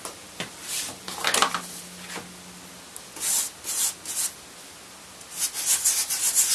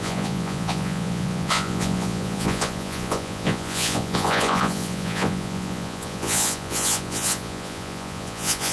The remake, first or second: second